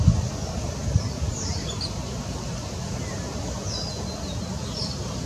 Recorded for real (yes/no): yes